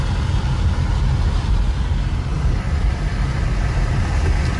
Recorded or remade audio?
recorded